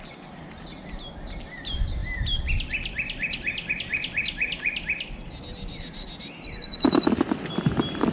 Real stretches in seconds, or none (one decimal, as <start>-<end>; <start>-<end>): 0.0-8.1

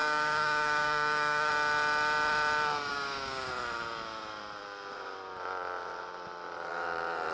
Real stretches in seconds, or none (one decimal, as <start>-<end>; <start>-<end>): 1.5-2.9; 3.5-7.3

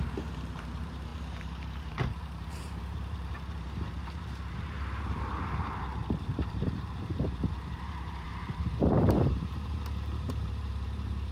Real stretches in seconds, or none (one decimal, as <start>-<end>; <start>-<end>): none

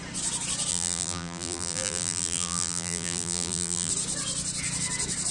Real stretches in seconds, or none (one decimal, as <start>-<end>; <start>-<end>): 0.0-0.7; 3.9-5.3

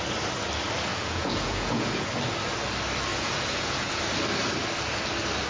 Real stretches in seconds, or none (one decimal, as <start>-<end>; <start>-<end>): 0.0-0.9; 2.1-3.1; 4.0-5.5

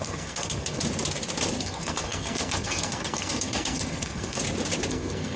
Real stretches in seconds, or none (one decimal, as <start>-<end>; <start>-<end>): 0.8-1.6; 4.4-4.9